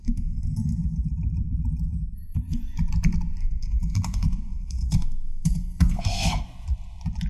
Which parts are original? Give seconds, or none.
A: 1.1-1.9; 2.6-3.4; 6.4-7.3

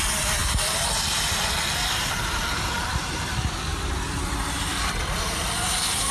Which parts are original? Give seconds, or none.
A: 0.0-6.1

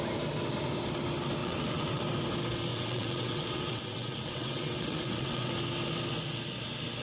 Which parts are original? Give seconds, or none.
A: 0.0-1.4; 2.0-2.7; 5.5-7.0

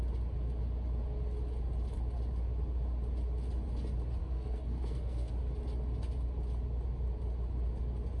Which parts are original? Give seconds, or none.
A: 0.0-4.2; 5.3-8.2